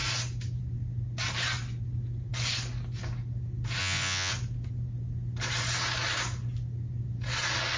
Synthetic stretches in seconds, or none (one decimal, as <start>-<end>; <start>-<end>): 3.8-4.3